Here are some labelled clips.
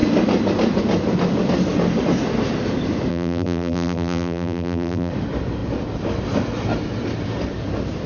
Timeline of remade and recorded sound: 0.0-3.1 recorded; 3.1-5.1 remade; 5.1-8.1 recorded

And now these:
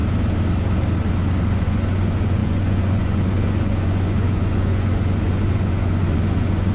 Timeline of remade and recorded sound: 0.0-1.6 recorded; 1.6-6.7 remade

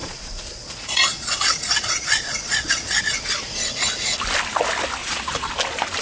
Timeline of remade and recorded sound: 0.0-3.0 remade; 3.0-5.0 recorded; 5.0-5.5 remade; 5.5-6.0 recorded

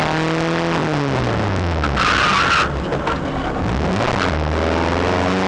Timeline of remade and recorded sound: 0.0-5.5 recorded

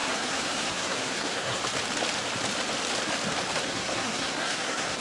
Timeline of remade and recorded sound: 0.0-1.6 remade; 1.6-3.6 recorded; 3.6-5.0 remade